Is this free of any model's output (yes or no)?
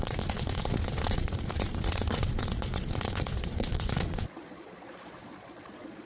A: no